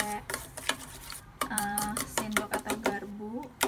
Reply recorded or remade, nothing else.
remade